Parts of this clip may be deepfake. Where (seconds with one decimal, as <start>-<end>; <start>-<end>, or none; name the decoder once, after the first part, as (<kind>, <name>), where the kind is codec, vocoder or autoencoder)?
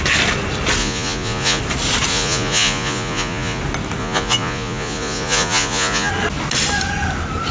0.8-1.6 (vocoder, Vocos); 2.1-3.6; 4.0-6.1